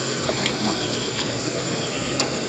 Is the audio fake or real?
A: fake